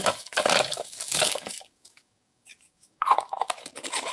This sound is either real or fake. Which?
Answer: fake